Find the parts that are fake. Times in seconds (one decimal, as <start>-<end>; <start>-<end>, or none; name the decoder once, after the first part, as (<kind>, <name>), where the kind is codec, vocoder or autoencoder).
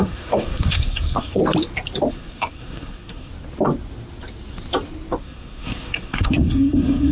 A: 0.0-1.4 (codec, SNAC); 2.1-3.3; 5.2-7.1